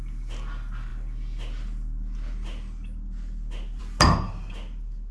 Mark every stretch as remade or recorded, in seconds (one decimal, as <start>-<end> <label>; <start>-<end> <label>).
0.0-5.1 recorded